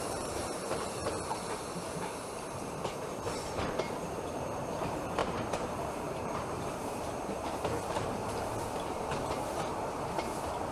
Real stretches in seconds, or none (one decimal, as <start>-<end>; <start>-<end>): none